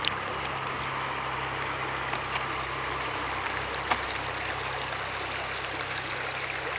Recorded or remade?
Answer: recorded